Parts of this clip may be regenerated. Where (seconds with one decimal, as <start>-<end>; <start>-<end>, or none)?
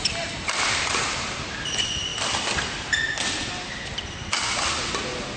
0.0-2.1